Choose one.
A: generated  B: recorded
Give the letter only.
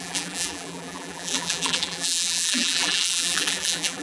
A